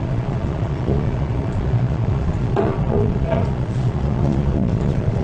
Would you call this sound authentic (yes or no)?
no